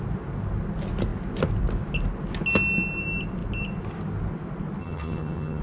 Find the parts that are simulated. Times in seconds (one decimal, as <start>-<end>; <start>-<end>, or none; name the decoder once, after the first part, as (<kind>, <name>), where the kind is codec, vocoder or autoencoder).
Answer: 4.8-5.6 (vocoder, HiFi-GAN)